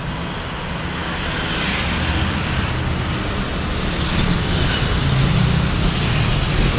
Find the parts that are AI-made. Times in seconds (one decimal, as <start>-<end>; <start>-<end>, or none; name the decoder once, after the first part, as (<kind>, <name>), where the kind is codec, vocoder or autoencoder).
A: none